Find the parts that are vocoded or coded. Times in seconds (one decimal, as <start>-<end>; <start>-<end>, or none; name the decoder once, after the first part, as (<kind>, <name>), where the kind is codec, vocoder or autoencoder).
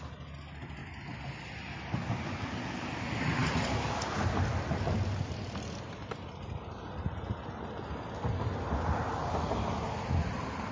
none